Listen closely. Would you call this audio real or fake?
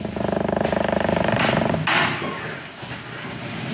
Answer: real